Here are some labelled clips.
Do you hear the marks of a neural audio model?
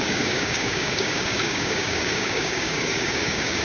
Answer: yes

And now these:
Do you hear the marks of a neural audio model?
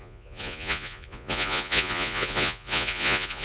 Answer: yes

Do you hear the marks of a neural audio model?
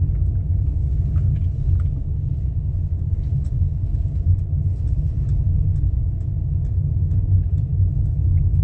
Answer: no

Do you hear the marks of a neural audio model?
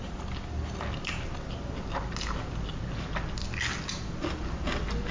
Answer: no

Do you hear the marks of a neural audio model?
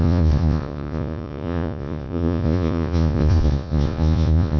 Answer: yes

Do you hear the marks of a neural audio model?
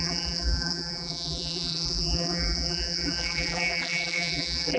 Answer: yes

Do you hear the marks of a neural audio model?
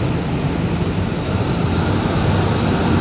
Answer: no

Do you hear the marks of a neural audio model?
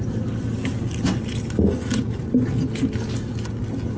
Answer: no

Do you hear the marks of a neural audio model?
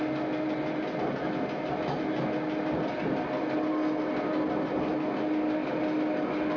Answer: no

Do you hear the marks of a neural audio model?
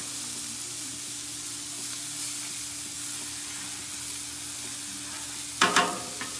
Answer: no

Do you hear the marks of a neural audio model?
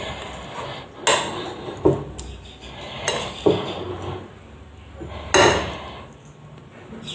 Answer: no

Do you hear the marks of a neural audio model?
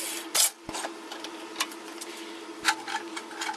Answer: no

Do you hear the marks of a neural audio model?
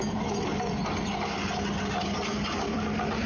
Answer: no